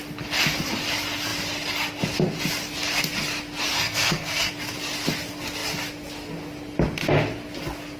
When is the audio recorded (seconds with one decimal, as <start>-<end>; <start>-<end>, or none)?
0.0-3.7; 4.5-8.0